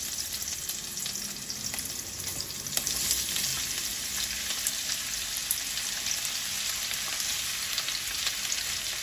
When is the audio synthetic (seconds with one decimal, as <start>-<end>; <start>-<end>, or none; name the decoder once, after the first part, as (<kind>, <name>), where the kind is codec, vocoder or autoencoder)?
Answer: none